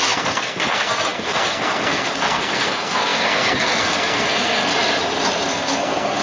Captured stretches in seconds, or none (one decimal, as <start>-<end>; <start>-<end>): 4.7-5.5